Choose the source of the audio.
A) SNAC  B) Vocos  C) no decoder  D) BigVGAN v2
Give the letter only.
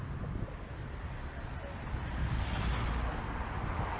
C